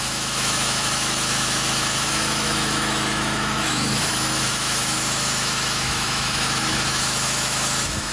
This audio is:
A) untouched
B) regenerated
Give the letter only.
B